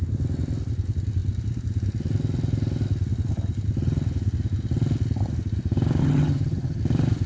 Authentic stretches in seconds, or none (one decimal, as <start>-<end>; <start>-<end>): 0.0-6.0; 6.8-7.3